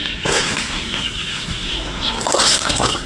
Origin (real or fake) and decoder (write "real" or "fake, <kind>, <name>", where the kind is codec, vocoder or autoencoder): fake, codec, SNAC